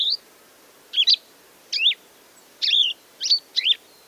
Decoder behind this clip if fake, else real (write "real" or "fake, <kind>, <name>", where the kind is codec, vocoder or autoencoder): real